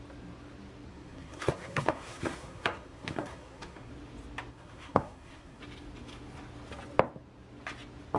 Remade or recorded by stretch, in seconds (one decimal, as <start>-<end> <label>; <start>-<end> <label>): 0.0-0.9 recorded; 0.9-3.9 remade; 3.9-4.5 recorded; 4.5-5.6 remade; 5.6-8.2 recorded